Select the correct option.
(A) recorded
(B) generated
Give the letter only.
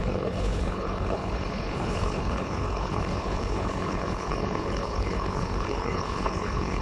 B